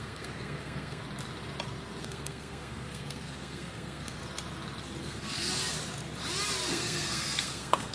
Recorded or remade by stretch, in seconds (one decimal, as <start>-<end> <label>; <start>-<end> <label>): 0.0-1.0 remade; 1.0-2.0 recorded; 2.0-4.2 remade; 4.2-5.0 recorded; 5.0-5.6 remade; 5.6-6.7 recorded; 6.7-7.9 remade

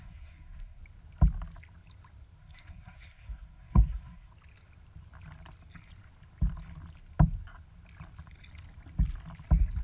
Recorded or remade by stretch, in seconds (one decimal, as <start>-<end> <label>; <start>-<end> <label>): 0.0-0.8 remade; 0.8-2.4 recorded; 2.4-4.3 remade; 4.3-9.8 recorded

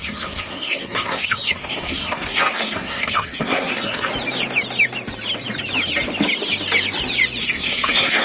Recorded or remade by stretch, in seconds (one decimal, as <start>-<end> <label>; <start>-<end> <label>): 0.0-4.1 remade; 4.1-7.4 recorded; 7.4-8.2 remade

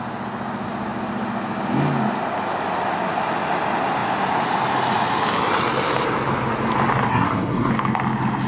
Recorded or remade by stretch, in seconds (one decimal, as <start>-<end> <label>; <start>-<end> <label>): 0.0-7.1 recorded; 7.1-7.7 remade; 7.7-8.5 recorded

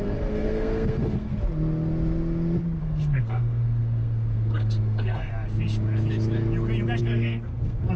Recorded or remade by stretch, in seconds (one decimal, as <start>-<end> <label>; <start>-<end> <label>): 0.0-1.3 remade; 1.3-2.8 recorded; 2.8-5.3 remade; 5.3-7.0 recorded; 7.0-8.0 remade